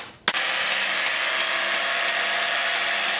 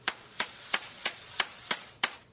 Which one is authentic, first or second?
first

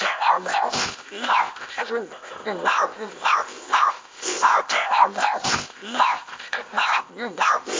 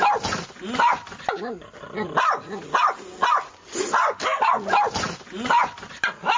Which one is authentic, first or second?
second